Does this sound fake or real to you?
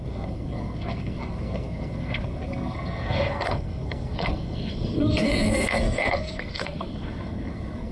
fake